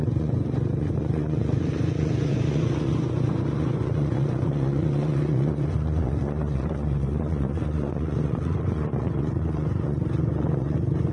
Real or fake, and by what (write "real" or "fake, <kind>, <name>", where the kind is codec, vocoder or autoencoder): fake, vocoder, Vocos